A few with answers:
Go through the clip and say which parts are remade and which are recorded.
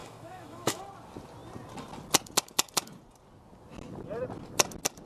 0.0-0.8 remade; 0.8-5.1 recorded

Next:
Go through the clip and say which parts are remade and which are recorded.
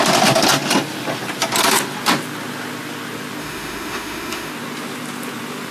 0.0-3.4 recorded; 3.4-4.5 remade; 4.5-5.7 recorded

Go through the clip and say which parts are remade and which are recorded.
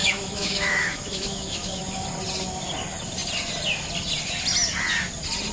0.0-1.8 remade; 1.8-5.5 recorded